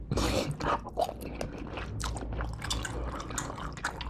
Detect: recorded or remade recorded